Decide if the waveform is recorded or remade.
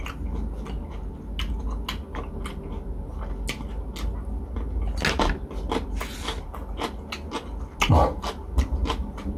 recorded